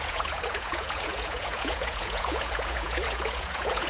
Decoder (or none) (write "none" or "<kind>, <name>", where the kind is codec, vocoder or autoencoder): vocoder, Vocos